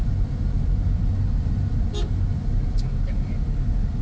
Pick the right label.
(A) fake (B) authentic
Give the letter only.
B